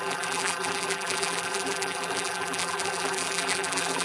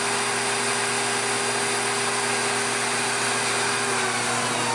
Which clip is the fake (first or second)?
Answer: first